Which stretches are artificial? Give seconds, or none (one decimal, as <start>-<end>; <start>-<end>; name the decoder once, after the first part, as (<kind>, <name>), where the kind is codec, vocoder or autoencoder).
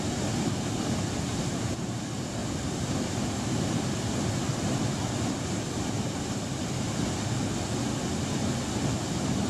none